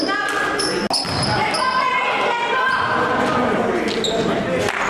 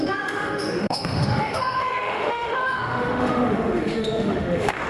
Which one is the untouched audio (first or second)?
first